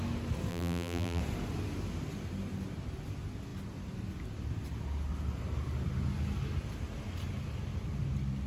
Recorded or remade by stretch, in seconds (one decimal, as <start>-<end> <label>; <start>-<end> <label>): 0.0-0.5 recorded; 0.5-1.2 remade; 1.2-8.5 recorded